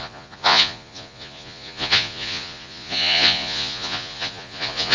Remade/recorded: remade